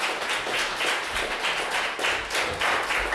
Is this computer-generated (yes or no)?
no